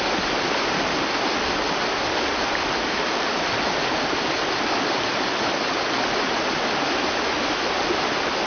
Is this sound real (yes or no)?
yes